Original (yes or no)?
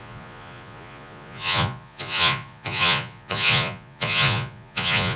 no